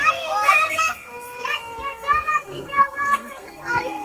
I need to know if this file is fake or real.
fake